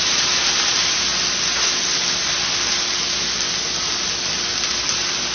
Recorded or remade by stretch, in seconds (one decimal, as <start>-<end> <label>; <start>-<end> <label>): 0.0-5.3 recorded